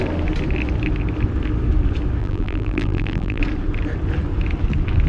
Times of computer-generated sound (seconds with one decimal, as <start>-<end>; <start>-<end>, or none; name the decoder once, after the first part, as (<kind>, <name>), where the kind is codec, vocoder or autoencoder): 2.2-3.4 (vocoder, BigVGAN v2)